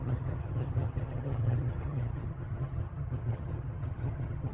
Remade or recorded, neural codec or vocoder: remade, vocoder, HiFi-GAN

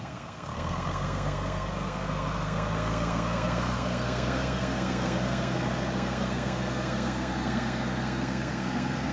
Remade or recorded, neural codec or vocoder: remade, codec, SNAC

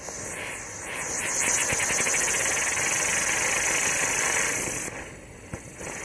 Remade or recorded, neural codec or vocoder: recorded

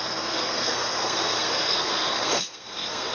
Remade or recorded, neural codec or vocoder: remade, codec, SNAC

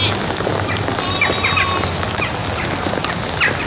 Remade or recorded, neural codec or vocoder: recorded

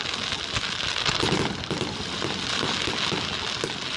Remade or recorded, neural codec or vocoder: recorded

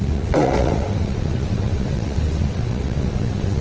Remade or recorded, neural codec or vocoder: remade, vocoder, WaveNeXt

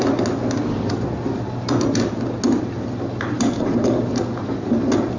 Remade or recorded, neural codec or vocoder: recorded